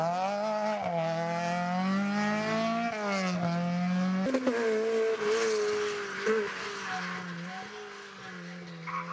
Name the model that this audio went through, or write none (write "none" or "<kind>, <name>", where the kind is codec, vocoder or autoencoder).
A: none